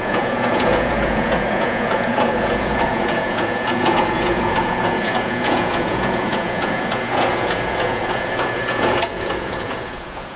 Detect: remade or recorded remade